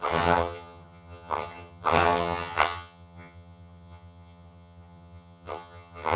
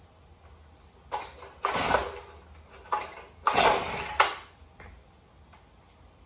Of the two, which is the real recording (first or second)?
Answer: second